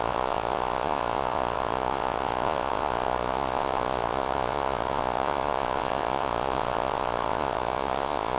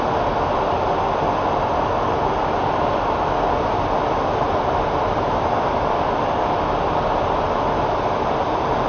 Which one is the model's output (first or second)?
first